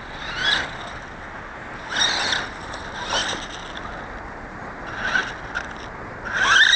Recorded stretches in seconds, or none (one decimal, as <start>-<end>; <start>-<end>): 0.0-6.8